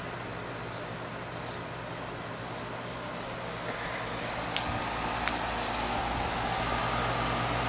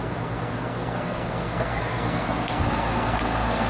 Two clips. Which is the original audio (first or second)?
first